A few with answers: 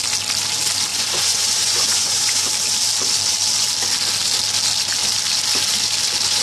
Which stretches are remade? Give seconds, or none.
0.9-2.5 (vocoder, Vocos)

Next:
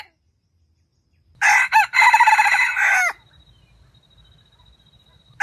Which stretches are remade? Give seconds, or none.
none

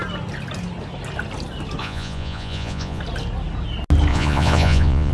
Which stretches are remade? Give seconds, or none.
1.8-3.0 (vocoder, Vocos); 4.1-5.1